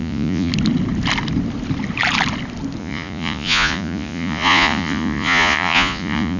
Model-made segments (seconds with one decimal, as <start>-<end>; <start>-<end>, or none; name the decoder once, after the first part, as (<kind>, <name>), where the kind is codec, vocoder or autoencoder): 0.0-0.5 (vocoder, Vocos); 2.8-6.4